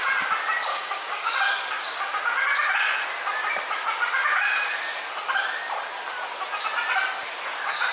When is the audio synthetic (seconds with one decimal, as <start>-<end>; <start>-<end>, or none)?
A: 0.7-1.3